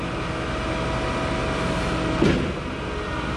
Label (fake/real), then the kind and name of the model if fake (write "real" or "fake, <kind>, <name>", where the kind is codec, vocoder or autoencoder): real